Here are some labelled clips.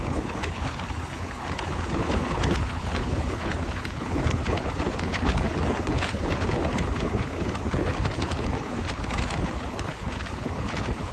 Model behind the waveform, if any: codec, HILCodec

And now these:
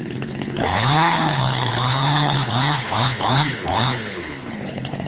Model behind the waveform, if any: codec, HILCodec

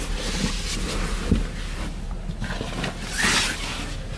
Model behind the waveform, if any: none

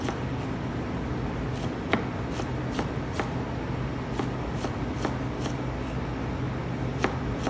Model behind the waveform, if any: none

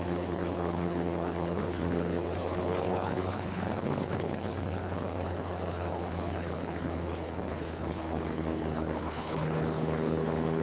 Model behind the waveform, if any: codec, HILCodec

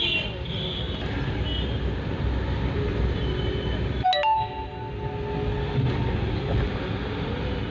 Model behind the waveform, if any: none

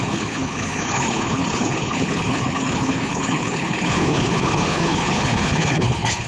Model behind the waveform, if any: codec, HILCodec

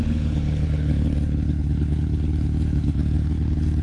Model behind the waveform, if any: codec, HILCodec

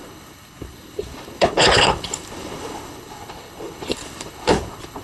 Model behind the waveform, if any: codec, HILCodec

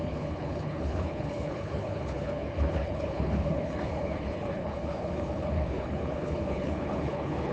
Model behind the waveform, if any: codec, HILCodec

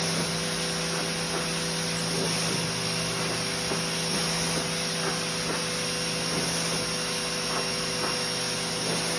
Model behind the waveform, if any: none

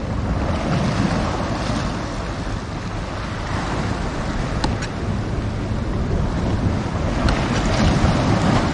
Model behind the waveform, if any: none